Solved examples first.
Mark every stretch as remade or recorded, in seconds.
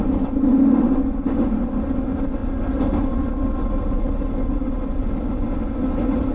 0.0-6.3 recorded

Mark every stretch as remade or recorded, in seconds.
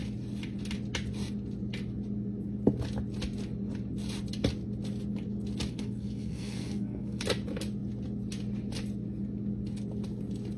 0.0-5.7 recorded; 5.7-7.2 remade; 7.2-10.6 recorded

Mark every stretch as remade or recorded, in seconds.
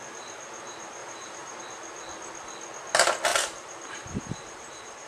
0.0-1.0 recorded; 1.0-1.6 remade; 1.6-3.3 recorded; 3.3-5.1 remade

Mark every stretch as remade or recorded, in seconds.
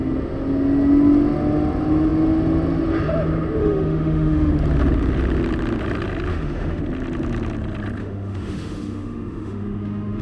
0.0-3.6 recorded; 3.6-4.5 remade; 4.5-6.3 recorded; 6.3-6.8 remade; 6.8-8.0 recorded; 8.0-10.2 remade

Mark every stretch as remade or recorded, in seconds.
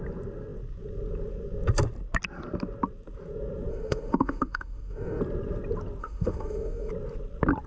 0.0-3.7 recorded; 3.7-5.2 remade; 5.2-6.0 recorded; 6.0-6.9 remade; 6.9-7.7 recorded